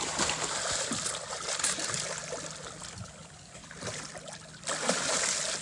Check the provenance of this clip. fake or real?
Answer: real